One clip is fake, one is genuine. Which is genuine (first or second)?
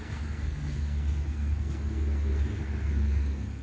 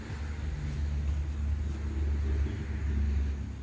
second